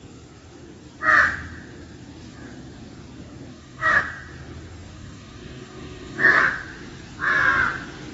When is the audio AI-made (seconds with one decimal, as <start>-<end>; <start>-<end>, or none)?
3.5-4.0; 4.9-6.4